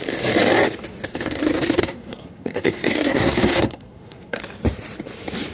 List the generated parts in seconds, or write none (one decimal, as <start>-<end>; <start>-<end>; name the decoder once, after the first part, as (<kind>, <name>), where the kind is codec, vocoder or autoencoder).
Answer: 1.1-4.4 (codec, SNAC)